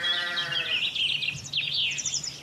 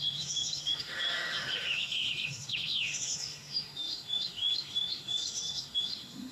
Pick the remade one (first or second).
second